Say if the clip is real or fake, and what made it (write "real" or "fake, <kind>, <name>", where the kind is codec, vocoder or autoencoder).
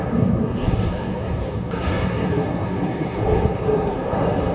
fake, codec, SNAC